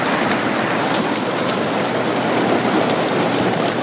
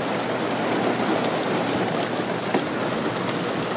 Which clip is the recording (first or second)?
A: second